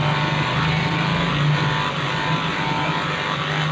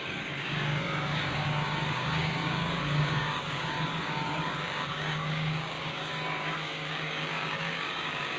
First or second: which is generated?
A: second